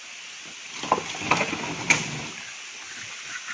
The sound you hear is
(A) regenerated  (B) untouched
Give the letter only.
B